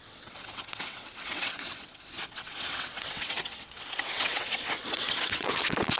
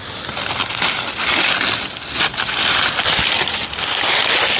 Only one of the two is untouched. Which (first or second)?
second